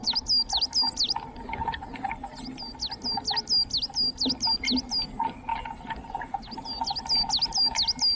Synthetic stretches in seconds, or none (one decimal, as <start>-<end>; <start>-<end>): none